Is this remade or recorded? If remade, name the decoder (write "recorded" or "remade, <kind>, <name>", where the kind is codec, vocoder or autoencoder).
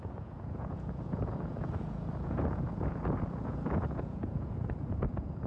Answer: remade, vocoder, Vocos